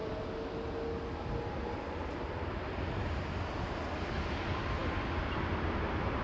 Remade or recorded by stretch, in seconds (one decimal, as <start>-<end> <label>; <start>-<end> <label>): 0.0-6.2 recorded